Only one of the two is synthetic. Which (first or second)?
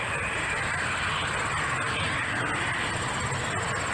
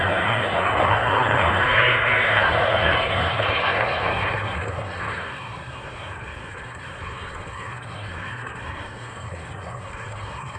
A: second